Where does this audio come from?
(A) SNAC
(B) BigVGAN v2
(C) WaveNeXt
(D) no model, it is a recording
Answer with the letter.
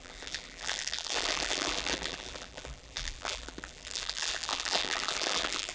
B